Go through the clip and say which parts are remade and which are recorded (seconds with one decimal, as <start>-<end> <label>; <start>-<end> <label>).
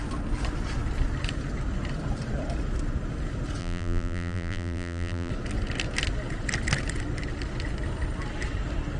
0.0-3.6 recorded; 3.6-5.3 remade; 5.3-9.0 recorded